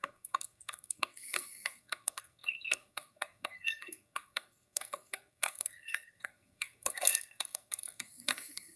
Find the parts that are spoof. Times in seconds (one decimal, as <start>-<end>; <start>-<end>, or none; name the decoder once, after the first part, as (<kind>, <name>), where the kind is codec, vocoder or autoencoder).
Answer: 0.0-8.8 (codec, SNAC)